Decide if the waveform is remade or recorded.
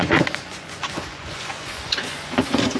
remade